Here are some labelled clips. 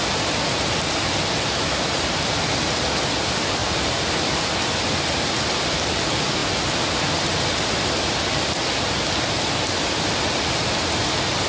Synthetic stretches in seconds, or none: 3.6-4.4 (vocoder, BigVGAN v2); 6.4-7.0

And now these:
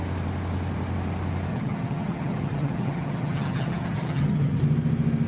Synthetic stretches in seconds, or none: 1.5-4.6 (vocoder, HiFi-GAN)